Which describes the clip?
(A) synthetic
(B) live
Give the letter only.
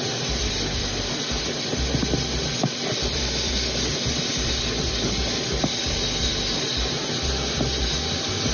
B